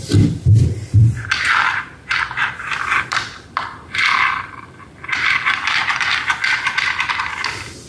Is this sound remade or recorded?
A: remade